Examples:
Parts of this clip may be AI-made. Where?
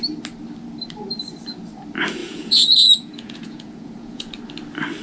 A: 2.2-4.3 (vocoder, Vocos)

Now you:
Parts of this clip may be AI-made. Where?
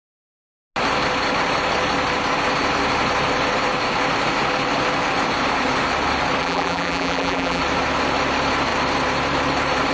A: 6.4-7.6 (vocoder, BigVGAN v2)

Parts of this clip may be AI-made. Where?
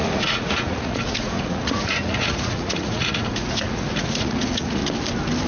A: 0.0-4.8 (vocoder, Vocos)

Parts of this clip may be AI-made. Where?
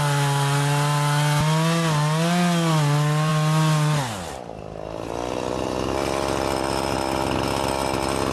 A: none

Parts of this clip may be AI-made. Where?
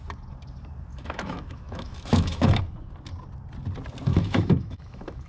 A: 0.9-2.6 (autoencoder, DAC-VAE); 4.1-5.3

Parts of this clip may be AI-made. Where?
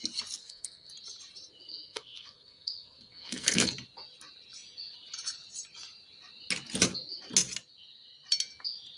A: 0.4-0.9 (codec, SNAC); 1.7-3.7